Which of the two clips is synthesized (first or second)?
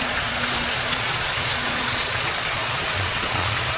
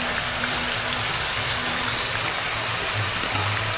first